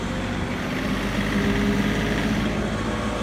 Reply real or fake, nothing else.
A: real